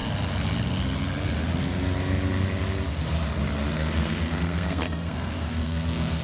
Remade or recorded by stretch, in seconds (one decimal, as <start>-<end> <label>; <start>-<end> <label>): 0.0-3.7 recorded; 3.7-6.2 remade